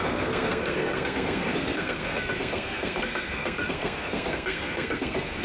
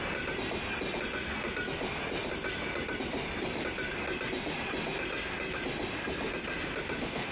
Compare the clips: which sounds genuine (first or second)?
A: second